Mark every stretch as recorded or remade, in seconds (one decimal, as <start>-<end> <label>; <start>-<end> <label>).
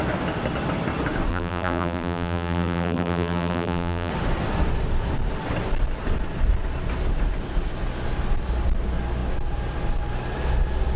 0.0-1.3 recorded; 1.3-4.1 remade; 4.1-11.0 recorded